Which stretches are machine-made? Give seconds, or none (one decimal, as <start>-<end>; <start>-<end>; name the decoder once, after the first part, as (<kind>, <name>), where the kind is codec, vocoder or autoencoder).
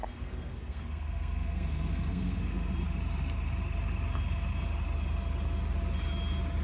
0.0-2.7 (codec, SNAC)